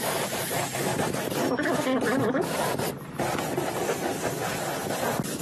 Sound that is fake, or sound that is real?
real